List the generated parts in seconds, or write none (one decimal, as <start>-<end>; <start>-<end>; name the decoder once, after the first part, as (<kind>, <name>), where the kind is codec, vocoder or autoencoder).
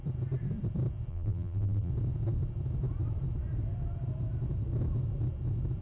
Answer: 1.1-1.9 (vocoder, BigVGAN v2)